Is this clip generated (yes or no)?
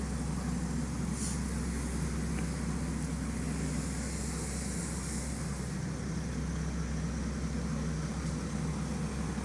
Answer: no